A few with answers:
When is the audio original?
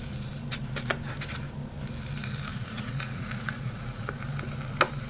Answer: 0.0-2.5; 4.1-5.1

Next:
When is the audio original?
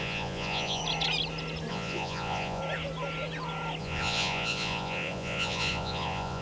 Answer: 0.8-1.7; 2.6-3.8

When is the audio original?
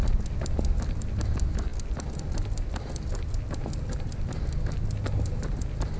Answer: 0.0-6.0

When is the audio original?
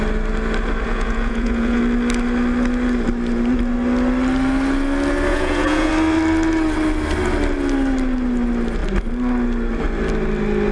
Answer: 0.0-0.9; 1.8-5.3; 5.9-10.7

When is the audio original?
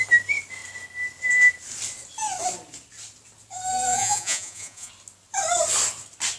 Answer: 0.0-3.9; 4.9-6.4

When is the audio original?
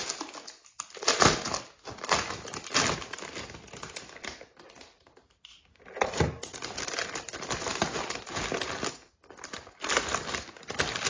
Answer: 0.0-11.1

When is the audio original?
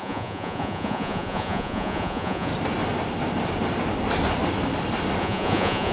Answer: 2.5-5.2